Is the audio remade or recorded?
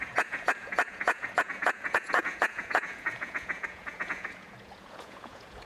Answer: remade